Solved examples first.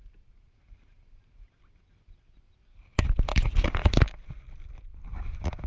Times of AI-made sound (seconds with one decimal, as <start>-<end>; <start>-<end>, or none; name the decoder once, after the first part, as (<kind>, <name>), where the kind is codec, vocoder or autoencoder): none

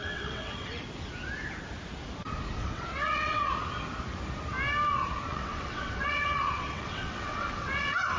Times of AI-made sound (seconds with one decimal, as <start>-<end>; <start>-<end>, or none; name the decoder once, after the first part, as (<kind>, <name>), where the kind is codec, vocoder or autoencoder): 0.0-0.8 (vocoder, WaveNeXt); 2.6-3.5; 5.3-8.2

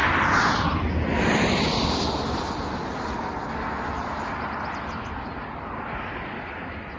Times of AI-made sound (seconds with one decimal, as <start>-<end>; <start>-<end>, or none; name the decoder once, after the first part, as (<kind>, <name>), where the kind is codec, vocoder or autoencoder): none

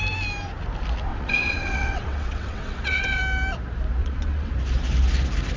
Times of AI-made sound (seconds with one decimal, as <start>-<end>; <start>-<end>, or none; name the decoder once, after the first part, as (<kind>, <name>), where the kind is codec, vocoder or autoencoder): 1.1-3.2 (vocoder, WaveNeXt); 4.0-4.5

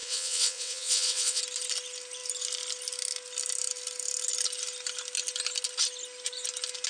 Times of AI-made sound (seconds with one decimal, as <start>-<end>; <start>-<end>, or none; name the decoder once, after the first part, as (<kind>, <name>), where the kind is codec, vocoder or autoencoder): 0.0-1.4 (vocoder, WaveNeXt)

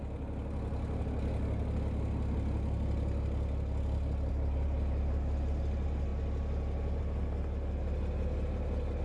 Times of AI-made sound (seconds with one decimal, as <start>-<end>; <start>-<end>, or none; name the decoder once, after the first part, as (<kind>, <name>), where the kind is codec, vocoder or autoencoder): none

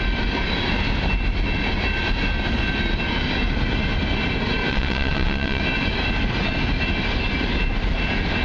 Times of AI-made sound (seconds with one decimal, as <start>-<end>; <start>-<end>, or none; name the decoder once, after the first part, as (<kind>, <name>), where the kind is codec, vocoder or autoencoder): 4.7-5.6 (vocoder, WaveNeXt)

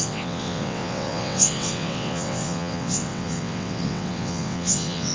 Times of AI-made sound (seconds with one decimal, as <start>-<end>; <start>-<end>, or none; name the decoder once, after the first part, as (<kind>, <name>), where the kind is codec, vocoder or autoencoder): 0.0-5.1 (vocoder, WaveNeXt)